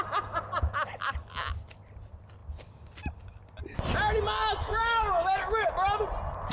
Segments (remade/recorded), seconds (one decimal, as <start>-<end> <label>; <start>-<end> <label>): 0.0-4.6 recorded; 4.6-5.7 remade; 5.7-6.5 recorded